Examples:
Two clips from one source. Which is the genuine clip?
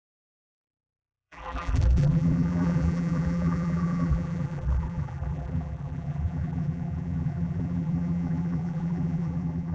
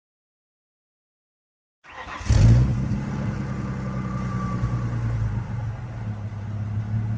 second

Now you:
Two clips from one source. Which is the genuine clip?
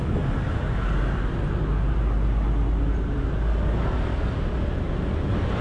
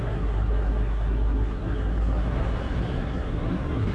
first